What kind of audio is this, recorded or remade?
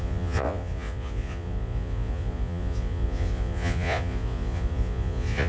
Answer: remade